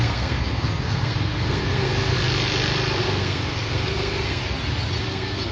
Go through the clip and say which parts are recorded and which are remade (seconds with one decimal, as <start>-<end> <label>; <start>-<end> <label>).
0.0-2.1 remade; 2.1-3.0 recorded; 3.0-4.4 remade; 4.4-5.0 recorded; 5.0-5.5 remade